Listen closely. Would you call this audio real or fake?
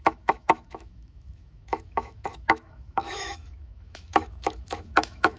fake